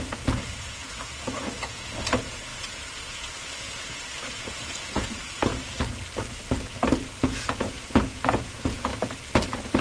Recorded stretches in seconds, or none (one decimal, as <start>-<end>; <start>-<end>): 5.5-7.2; 8.9-9.8